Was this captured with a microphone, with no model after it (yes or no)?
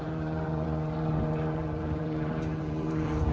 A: no